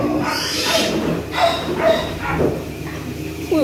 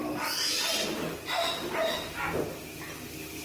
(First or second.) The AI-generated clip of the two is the first